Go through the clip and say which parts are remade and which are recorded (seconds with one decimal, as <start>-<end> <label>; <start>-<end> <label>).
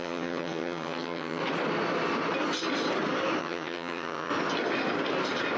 0.0-1.4 remade; 1.4-3.4 recorded; 3.4-4.3 remade; 4.3-5.6 recorded